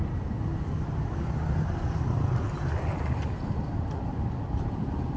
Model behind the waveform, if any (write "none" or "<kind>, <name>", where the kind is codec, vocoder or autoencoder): none